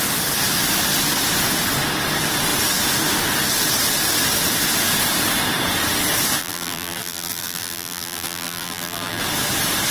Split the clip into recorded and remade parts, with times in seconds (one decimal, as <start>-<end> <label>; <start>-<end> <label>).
0.0-6.4 recorded; 6.4-9.2 remade; 9.2-9.9 recorded